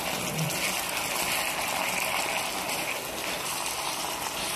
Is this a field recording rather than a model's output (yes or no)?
yes